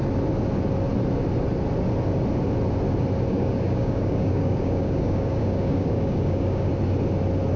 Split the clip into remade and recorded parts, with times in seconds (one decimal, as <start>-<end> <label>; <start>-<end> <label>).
0.0-3.3 recorded; 3.3-6.7 remade; 6.7-7.6 recorded